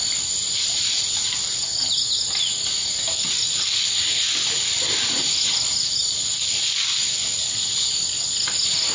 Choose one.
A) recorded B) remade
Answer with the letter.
A